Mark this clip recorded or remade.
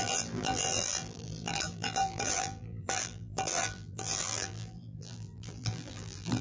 remade